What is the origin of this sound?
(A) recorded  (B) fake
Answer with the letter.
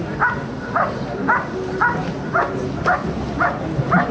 A